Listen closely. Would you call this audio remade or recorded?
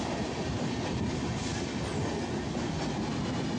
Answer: recorded